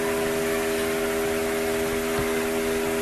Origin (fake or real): real